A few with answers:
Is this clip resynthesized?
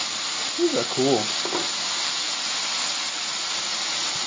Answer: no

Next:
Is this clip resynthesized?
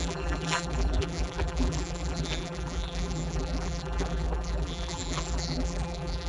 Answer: yes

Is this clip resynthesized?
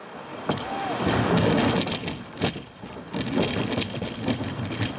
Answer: no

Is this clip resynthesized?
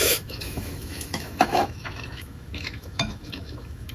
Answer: yes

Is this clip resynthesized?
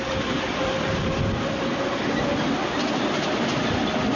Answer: no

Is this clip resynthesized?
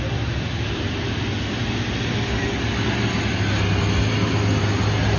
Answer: no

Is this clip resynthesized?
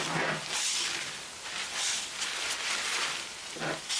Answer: no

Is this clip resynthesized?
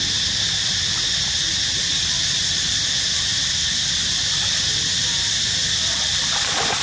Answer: no